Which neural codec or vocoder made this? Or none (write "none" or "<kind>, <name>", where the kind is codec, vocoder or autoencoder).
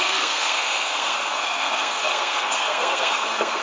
codec, SNAC